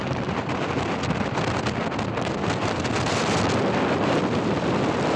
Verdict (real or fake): real